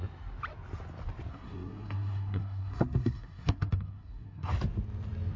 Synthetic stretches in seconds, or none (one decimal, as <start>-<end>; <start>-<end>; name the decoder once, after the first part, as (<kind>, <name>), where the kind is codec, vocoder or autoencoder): 1.3-4.5 (codec, SNAC)